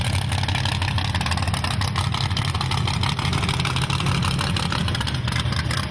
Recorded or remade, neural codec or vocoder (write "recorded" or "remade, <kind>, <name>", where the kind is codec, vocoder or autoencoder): recorded